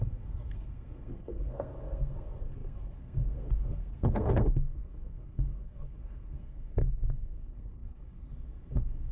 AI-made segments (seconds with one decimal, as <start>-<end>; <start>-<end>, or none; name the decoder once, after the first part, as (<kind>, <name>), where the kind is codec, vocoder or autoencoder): 0.0-9.1 (codec, SNAC)